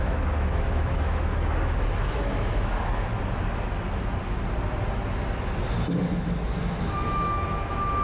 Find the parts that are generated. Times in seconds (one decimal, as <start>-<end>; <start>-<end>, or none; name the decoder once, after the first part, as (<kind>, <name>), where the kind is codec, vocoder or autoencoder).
0.0-3.1 (autoencoder, DAC-VAE); 6.1-8.0